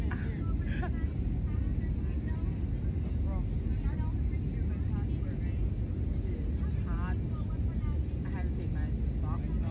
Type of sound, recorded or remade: recorded